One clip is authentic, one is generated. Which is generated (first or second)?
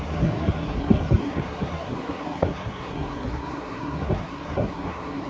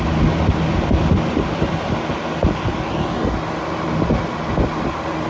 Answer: first